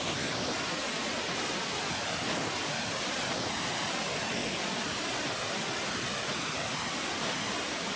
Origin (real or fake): real